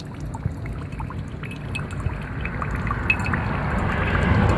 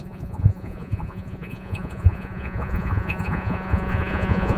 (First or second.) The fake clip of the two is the second